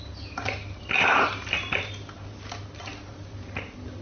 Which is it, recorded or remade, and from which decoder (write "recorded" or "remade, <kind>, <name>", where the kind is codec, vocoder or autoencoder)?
recorded